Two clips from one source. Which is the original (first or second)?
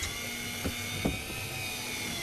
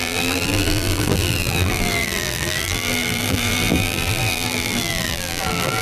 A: first